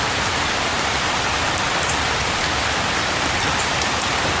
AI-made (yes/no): yes